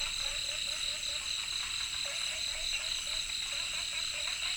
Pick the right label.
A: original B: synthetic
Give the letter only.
A